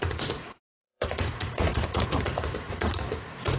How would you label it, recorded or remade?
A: remade